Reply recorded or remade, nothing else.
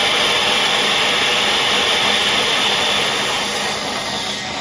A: recorded